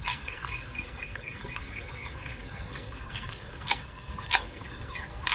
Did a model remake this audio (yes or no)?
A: yes